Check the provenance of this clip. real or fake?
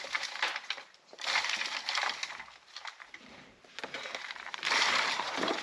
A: fake